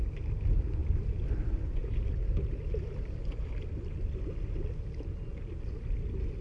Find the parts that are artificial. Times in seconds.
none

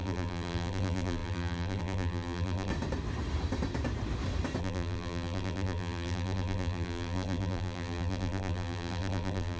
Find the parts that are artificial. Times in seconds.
0.0-2.7 (vocoder, BigVGAN v2); 4.6-9.6

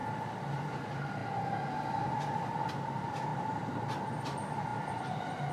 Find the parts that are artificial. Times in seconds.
0.6-1.2 (vocoder, BigVGAN v2); 2.7-3.3; 4.1-5.5

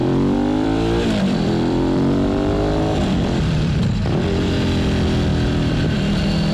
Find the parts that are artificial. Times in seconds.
0.0-3.9 (vocoder, BigVGAN v2); 5.3-6.0